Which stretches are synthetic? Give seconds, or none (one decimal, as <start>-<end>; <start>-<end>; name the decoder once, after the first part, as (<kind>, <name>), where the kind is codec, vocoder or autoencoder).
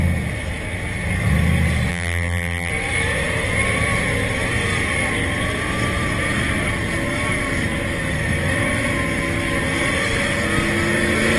1.9-2.7 (vocoder, BigVGAN v2)